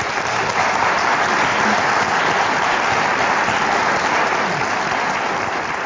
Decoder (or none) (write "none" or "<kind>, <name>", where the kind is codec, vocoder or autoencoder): none